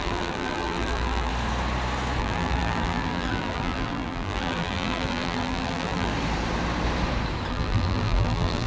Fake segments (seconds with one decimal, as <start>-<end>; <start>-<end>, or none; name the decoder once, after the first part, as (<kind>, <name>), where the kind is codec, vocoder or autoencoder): 0.0-1.3 (vocoder, BigVGAN v2); 2.2-6.1; 7.5-8.7